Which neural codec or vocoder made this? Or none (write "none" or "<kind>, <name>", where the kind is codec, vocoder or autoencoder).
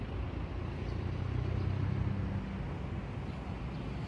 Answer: none